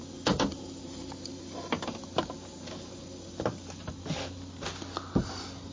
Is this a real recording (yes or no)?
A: yes